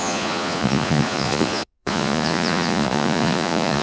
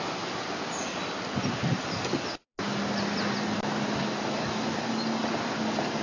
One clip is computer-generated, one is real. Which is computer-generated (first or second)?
first